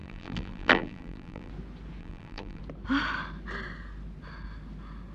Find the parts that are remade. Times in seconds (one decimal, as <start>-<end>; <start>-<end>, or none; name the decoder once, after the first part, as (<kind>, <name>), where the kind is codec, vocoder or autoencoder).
0.0-1.5 (vocoder, BigVGAN v2); 2.0-2.6